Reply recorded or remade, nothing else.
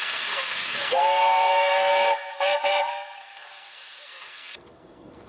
remade